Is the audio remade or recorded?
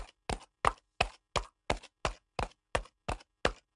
recorded